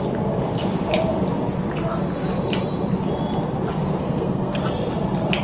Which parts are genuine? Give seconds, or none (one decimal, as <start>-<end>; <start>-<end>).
0.0-4.0; 4.6-5.4

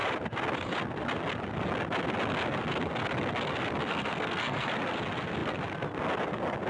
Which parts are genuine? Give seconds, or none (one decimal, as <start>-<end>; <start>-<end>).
0.0-3.9; 4.7-6.7

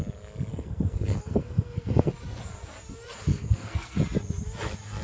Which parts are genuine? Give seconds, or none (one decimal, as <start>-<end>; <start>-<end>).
0.0-0.5; 2.1-3.3; 4.0-5.0

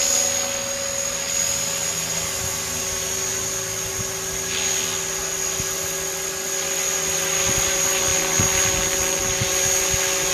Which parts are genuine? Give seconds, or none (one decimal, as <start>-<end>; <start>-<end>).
0.0-10.3

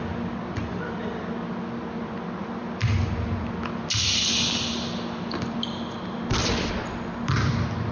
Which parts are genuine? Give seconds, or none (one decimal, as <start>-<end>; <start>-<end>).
0.0-7.9

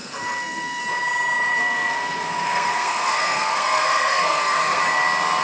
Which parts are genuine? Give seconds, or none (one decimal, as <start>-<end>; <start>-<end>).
0.8-1.6; 4.8-5.4

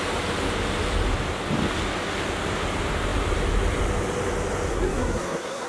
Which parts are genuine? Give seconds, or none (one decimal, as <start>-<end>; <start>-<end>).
0.0-4.7